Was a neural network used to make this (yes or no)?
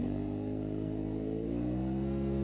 yes